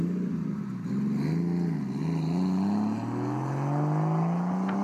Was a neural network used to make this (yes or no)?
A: no